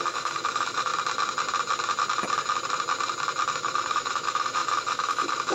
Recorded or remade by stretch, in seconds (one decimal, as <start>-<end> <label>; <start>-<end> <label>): 0.0-0.9 remade; 0.9-3.5 recorded; 3.5-5.5 remade